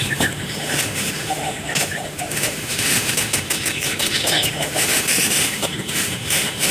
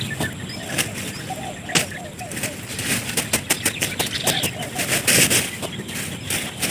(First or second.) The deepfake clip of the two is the first